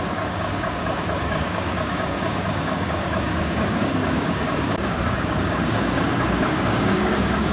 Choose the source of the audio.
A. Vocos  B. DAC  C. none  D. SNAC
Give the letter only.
B